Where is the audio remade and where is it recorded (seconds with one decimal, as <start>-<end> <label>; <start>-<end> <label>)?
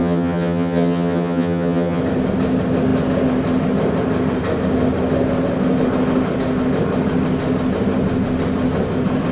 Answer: 0.0-2.0 remade; 2.0-9.3 recorded